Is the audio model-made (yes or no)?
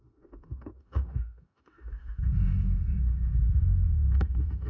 yes